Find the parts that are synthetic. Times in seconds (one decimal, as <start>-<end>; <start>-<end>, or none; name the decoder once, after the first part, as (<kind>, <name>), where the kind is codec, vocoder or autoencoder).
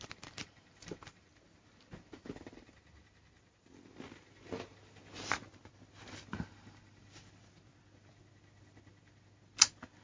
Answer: none